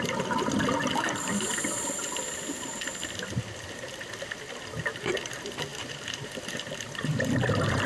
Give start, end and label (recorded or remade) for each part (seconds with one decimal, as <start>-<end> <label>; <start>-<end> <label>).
0.0-5.7 remade; 5.7-6.8 recorded; 6.8-7.9 remade